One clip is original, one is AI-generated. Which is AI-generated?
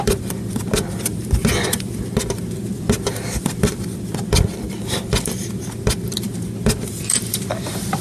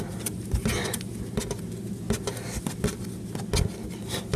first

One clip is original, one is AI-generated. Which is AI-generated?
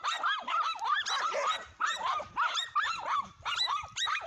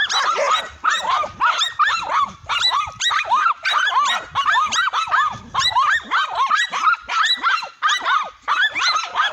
first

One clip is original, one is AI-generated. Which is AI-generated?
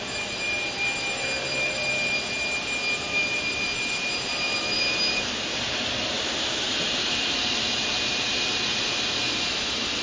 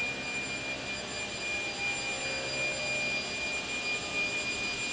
first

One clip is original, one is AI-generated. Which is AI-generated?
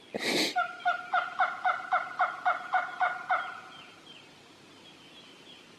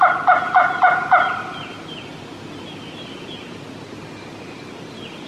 first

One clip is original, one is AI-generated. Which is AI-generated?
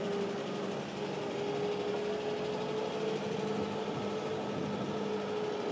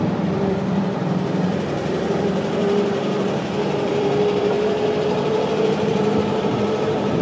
second